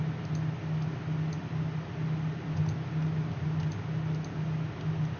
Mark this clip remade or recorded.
recorded